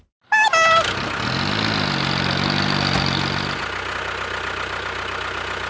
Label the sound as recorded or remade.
recorded